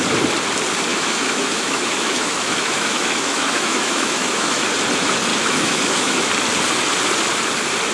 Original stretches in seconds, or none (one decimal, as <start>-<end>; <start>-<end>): 0.0-0.9; 4.7-5.3; 6.3-7.9